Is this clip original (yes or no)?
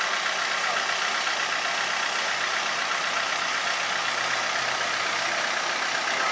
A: yes